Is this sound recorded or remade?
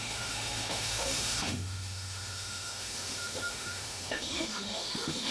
remade